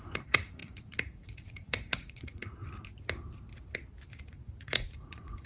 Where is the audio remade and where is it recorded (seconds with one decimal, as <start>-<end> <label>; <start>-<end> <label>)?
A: 0.0-2.6 remade; 2.6-4.3 recorded; 4.3-5.5 remade

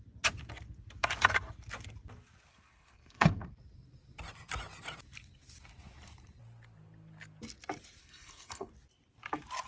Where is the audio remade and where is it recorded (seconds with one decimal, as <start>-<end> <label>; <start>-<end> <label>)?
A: 0.0-2.5 recorded; 2.5-3.5 remade; 3.5-8.0 recorded; 8.0-8.7 remade; 8.7-9.7 recorded

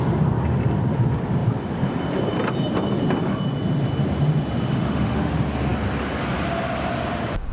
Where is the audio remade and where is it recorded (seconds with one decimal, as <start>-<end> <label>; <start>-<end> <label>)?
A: 0.0-4.7 recorded; 4.7-5.3 remade; 5.3-7.5 recorded

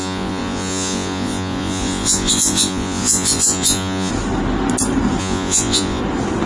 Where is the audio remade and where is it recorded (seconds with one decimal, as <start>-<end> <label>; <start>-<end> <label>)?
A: 0.0-4.1 remade; 4.1-5.2 recorded; 5.2-6.0 remade; 6.0-6.5 recorded

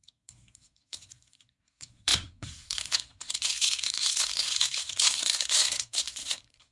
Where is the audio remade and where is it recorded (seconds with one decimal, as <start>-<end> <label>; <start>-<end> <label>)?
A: 0.0-6.7 remade